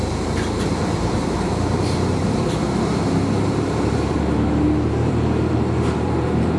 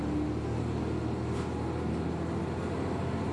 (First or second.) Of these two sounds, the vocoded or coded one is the first